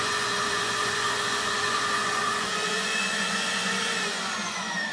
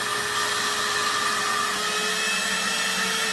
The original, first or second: second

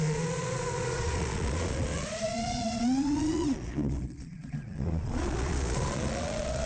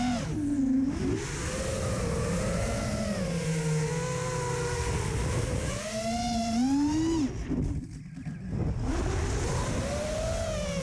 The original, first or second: second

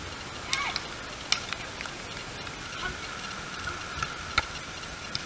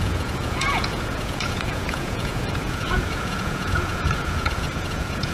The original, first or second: first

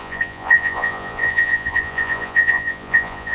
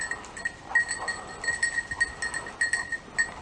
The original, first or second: second